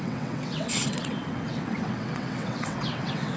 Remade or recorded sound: remade